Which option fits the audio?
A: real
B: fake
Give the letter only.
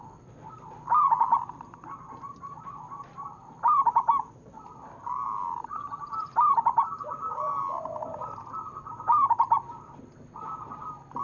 A